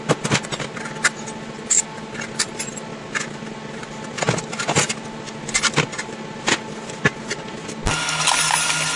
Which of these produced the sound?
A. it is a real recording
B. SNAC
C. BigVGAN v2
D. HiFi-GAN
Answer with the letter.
A